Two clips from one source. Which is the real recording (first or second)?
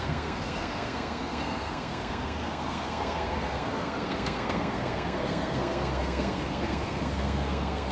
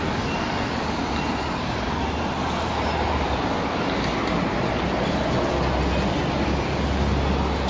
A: second